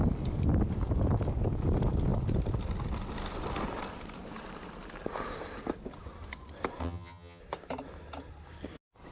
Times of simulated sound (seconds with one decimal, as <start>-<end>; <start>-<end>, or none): 6.8-7.4